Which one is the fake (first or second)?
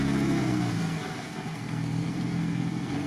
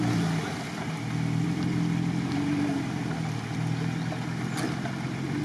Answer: first